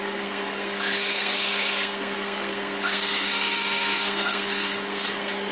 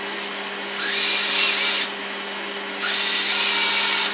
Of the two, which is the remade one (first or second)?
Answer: first